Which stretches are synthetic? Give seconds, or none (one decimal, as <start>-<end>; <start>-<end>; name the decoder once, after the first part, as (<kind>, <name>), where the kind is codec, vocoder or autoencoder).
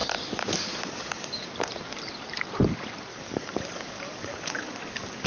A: 0.0-1.5 (codec, DAC); 3.1-5.3